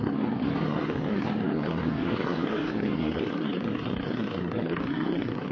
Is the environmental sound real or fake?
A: fake